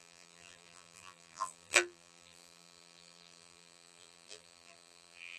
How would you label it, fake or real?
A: fake